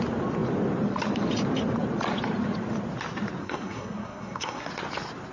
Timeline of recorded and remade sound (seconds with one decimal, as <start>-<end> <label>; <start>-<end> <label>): 0.0-3.4 recorded; 3.4-4.7 remade; 4.7-5.3 recorded